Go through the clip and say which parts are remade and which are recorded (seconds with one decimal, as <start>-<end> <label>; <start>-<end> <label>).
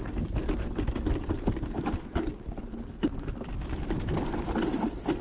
0.0-5.2 recorded